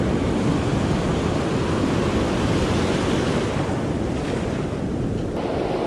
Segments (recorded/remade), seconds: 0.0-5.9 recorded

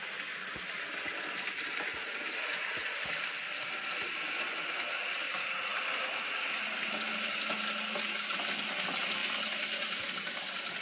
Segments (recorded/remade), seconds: 0.0-10.8 recorded

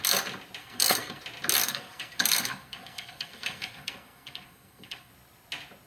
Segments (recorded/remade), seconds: 0.0-0.6 recorded; 0.6-1.2 remade; 1.2-1.6 recorded; 1.6-5.1 remade; 5.1-5.9 recorded

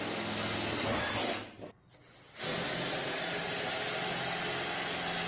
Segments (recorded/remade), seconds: 0.0-5.3 recorded

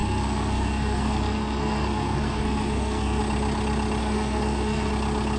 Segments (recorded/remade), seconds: 0.0-3.2 remade; 3.2-4.0 recorded; 4.0-4.9 remade; 4.9-5.4 recorded